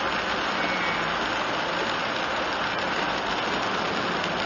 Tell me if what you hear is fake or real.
real